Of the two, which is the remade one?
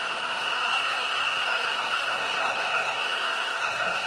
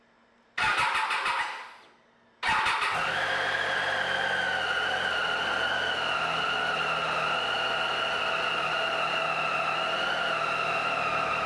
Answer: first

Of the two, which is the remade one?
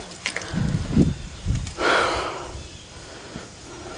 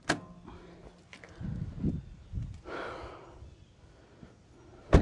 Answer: first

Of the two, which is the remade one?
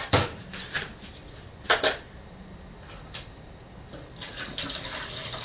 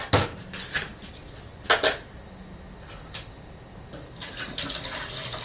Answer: first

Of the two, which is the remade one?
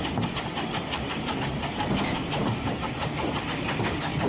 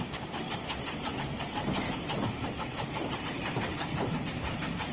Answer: second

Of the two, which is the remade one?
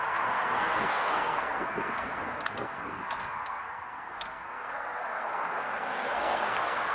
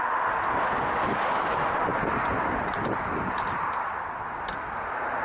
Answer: first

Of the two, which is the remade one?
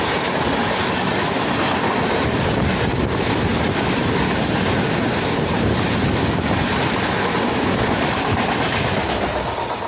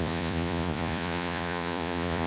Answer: second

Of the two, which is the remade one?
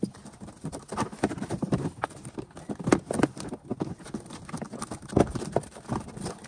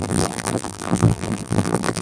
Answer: second